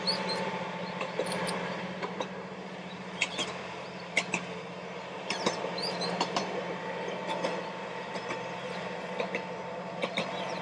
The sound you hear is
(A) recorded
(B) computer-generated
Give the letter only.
B